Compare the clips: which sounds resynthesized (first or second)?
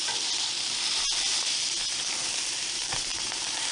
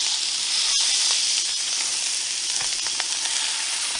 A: first